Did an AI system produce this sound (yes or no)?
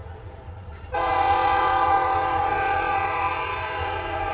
yes